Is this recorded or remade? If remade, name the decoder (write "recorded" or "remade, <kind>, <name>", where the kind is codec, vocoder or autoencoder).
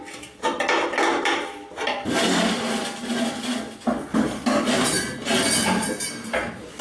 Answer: recorded